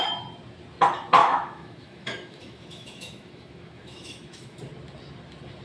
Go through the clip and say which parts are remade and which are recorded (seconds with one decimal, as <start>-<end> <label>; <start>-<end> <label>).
0.0-1.2 recorded; 1.2-4.6 remade; 4.6-5.6 recorded